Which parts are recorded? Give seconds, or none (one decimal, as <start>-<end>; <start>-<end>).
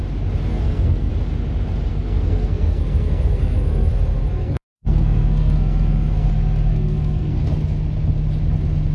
0.0-0.5; 1.1-1.9; 3.9-4.3; 6.3-6.7; 7.4-8.9